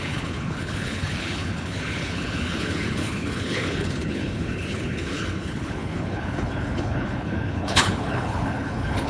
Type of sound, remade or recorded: remade